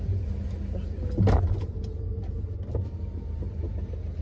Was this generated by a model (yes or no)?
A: no